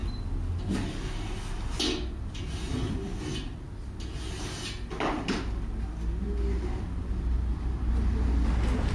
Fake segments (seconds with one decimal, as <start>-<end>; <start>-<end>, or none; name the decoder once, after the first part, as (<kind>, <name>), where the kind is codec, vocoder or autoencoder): none